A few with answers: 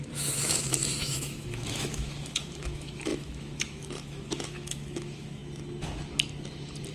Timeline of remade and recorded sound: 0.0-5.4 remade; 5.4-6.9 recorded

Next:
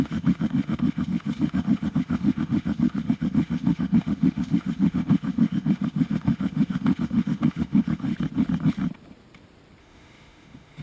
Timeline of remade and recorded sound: 0.0-8.1 remade; 8.1-9.8 recorded; 9.8-10.8 remade

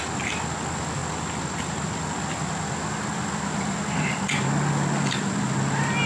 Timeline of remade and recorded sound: 0.0-6.1 recorded

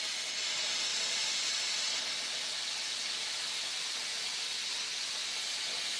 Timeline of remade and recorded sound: 0.0-6.0 recorded

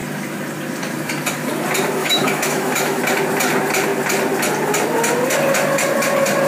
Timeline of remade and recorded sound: 0.0-2.0 recorded; 2.0-3.0 remade; 3.0-6.5 recorded

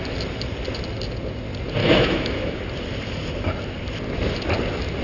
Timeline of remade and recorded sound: 0.0-1.8 recorded; 1.8-2.6 remade; 2.6-5.0 recorded

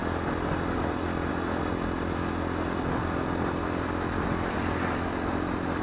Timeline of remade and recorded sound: 0.0-5.8 recorded

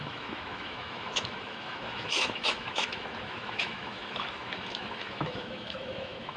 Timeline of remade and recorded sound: 0.0-6.4 remade